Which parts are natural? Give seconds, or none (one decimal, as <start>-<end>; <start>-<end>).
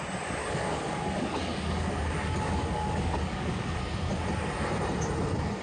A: 0.0-0.4; 3.8-5.6